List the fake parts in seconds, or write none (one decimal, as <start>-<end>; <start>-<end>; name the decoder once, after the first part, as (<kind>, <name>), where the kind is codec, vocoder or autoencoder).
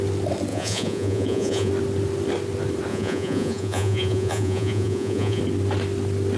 0.5-1.7 (vocoder, Vocos); 2.9-5.4